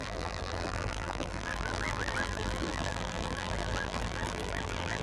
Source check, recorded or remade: remade